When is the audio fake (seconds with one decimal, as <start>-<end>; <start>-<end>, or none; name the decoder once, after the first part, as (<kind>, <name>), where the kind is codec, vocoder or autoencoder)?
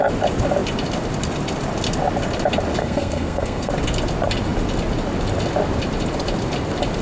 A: 2.8-3.7 (codec, SNAC)